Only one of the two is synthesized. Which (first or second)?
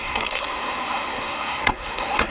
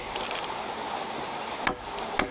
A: first